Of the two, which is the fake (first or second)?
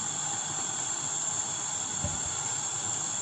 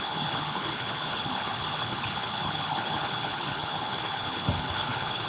second